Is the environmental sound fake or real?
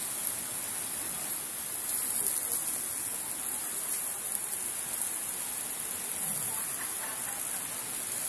real